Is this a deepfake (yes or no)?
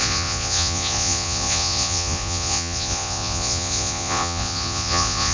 yes